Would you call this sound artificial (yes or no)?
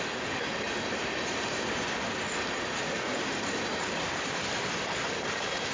no